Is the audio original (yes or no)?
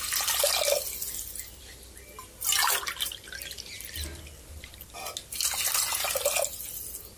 yes